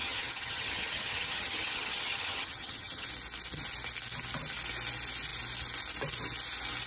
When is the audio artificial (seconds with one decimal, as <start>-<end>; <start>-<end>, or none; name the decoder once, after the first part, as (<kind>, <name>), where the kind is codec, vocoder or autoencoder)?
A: 0.0-3.1 (vocoder, HiFi-GAN)